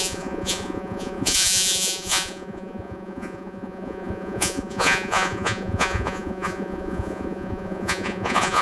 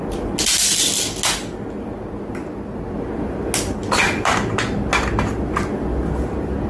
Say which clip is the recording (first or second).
second